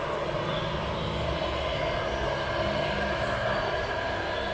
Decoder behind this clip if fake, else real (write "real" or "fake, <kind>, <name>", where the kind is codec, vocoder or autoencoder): real